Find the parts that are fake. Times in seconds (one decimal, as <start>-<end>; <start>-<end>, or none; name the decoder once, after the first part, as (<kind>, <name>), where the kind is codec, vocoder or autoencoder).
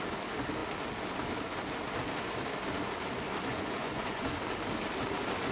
3.5-4.3 (vocoder, Vocos)